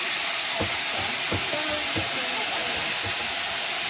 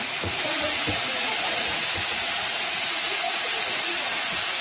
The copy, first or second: second